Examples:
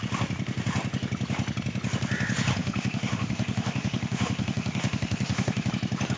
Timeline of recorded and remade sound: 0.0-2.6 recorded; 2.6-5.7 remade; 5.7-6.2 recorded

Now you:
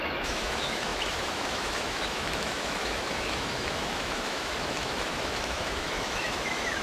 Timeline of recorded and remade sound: 0.0-6.8 remade

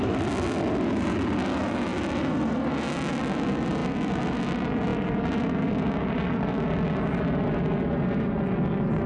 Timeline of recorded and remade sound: 0.0-9.1 recorded

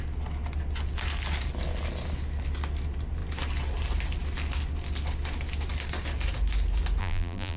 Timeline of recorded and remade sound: 0.0-7.0 recorded; 7.0-7.6 remade

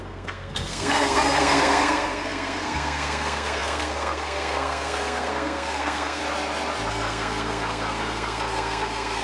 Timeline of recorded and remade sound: 0.0-6.2 remade; 6.2-6.9 recorded; 6.9-9.2 remade

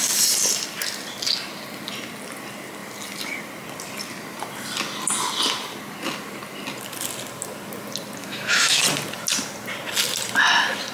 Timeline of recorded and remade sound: 0.0-8.2 recorded; 8.2-8.8 remade; 8.8-10.9 recorded

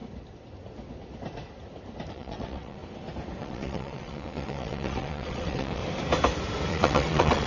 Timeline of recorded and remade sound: 0.0-2.1 recorded; 2.1-2.8 remade; 2.8-3.4 recorded; 3.4-5.8 remade; 5.8-6.7 recorded; 6.7-7.5 remade

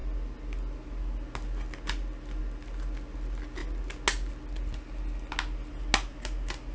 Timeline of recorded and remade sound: 0.0-6.7 recorded